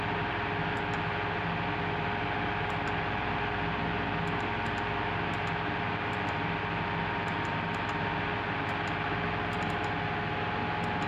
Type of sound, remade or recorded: recorded